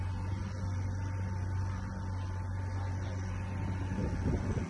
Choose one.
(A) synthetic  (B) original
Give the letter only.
B